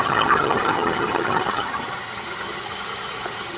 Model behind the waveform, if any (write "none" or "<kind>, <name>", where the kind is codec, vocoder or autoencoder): vocoder, HiFi-GAN